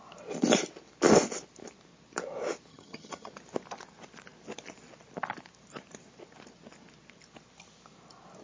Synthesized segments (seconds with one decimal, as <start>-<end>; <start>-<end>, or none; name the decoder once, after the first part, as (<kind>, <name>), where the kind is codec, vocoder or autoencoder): 2.7-3.3 (vocoder, HiFi-GAN)